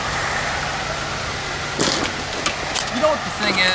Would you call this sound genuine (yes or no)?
yes